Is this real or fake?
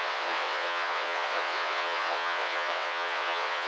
fake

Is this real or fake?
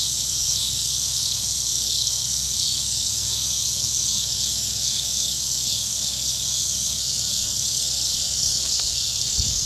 fake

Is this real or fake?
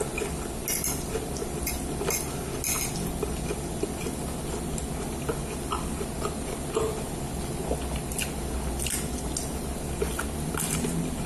real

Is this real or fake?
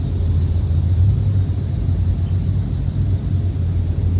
real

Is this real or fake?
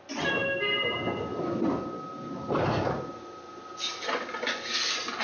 real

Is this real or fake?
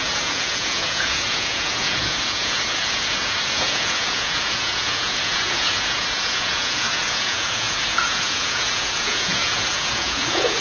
fake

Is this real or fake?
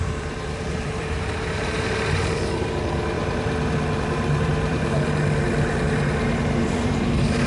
fake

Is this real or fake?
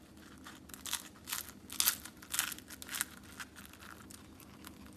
real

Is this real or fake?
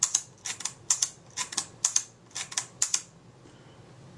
real